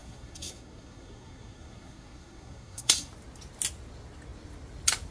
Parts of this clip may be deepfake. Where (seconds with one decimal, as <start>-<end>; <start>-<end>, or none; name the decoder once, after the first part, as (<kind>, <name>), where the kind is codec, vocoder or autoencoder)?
0.0-3.1 (codec, SNAC)

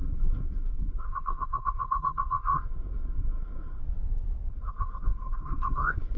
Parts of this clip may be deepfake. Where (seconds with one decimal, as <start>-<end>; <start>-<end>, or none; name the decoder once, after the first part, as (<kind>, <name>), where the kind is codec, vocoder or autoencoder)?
0.0-3.8 (codec, SNAC); 4.5-6.2

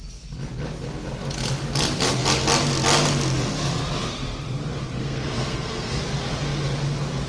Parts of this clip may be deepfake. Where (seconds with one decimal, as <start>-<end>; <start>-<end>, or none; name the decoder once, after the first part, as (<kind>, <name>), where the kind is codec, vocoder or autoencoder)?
5.0-6.0 (codec, SNAC)

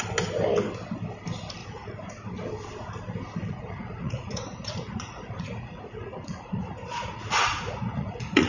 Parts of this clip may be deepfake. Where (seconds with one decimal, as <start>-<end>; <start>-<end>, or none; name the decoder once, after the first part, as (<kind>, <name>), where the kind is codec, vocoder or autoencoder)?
1.6-2.1 (vocoder, Vocos); 3.4-8.5

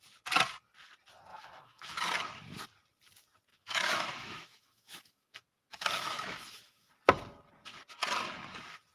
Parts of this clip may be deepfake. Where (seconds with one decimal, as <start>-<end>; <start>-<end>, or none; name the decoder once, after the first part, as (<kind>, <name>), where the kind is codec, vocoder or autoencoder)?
1.3-1.9 (autoencoder, DAC-VAE); 3.5-6.9

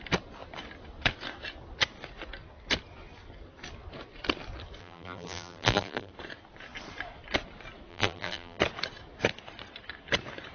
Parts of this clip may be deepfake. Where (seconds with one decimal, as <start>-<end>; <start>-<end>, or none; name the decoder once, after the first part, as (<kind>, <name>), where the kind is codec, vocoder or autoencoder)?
4.8-6.1 (vocoder, BigVGAN v2); 7.9-8.6

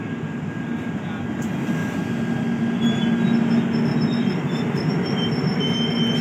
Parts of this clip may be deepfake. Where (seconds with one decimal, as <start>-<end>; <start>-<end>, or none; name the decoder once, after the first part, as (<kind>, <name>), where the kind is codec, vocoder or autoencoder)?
1.8-2.6 (vocoder, BigVGAN v2); 3.9-5.5

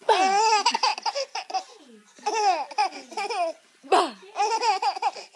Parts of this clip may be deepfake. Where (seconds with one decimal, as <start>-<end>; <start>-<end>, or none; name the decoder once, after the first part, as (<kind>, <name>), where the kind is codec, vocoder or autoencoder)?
none